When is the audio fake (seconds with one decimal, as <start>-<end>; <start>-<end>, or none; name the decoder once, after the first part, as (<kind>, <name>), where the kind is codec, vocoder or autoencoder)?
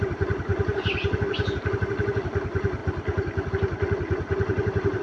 none